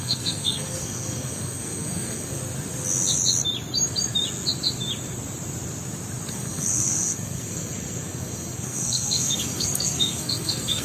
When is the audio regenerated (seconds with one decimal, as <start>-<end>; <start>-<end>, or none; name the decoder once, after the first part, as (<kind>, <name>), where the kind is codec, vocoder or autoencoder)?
0.0-2.4 (codec, SNAC); 6.3-10.8